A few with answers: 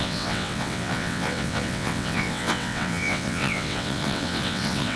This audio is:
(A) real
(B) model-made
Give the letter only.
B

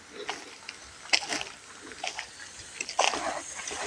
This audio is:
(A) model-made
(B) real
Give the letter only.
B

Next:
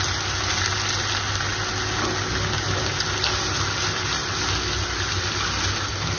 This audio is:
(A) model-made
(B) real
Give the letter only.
B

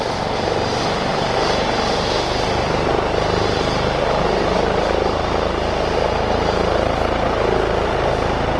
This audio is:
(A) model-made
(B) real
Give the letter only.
B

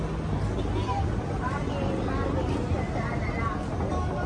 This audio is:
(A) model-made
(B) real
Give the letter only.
B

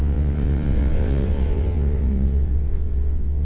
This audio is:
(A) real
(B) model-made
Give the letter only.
B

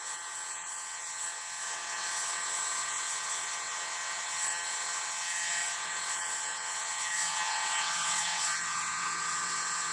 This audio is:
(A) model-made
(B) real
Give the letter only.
A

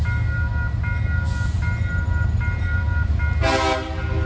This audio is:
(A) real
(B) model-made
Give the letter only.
A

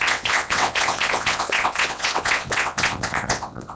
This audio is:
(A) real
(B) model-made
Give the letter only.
B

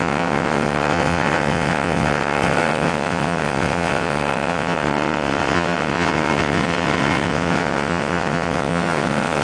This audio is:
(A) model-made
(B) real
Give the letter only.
A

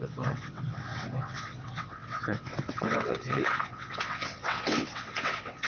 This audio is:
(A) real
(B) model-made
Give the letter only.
B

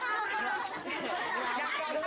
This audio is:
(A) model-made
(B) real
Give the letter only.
B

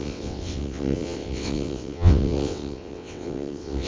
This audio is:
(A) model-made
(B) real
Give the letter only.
A